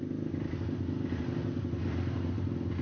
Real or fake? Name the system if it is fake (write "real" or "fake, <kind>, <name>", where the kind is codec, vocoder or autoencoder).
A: real